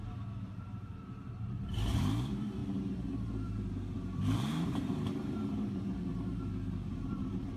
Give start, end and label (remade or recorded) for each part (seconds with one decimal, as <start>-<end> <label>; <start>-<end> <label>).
0.0-7.6 remade